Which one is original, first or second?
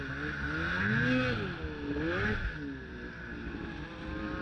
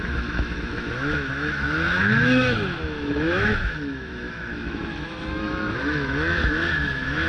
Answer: first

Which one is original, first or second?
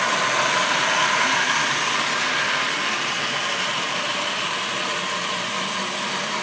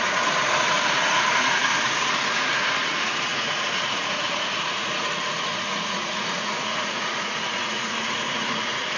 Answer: first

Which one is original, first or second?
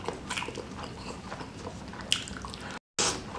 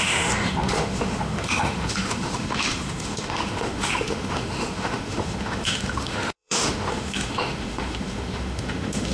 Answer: first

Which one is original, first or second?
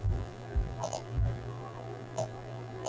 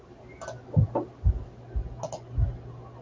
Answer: second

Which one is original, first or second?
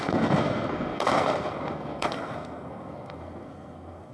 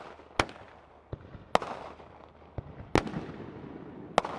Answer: second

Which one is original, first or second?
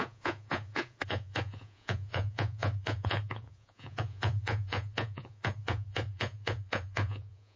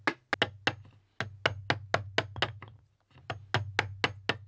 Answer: second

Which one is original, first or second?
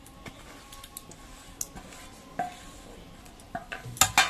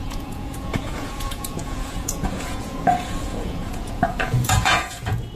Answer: first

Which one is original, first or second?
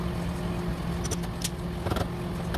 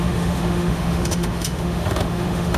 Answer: first